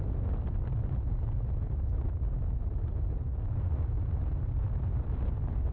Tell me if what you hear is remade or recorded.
recorded